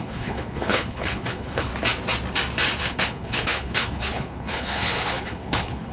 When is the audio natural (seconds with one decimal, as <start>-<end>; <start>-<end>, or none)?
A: 1.7-2.8